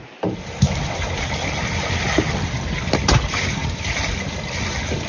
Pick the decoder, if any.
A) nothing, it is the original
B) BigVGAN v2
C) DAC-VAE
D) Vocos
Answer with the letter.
A